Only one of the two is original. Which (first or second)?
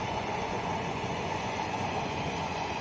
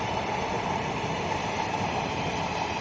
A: second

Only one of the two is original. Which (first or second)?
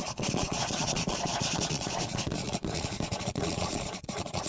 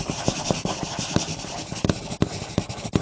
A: second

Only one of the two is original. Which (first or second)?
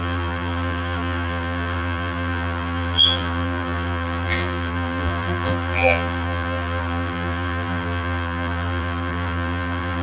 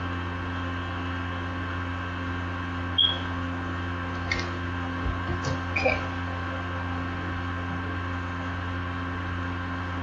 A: second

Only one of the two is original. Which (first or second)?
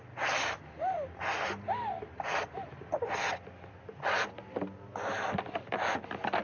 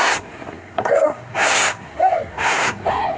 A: first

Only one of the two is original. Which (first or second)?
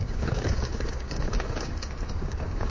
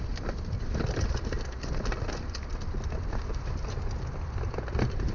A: second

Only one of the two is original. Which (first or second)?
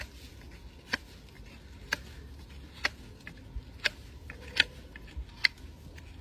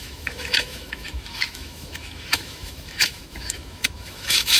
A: first